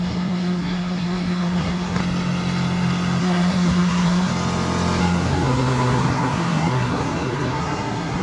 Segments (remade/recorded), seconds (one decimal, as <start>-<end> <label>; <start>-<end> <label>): 0.0-2.0 remade; 2.0-3.2 recorded; 3.2-4.3 remade; 4.3-5.0 recorded; 5.0-8.2 remade